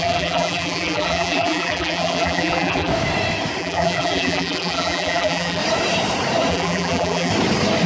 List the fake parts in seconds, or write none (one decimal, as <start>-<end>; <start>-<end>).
0.0-2.9; 3.6-5.6; 6.5-7.3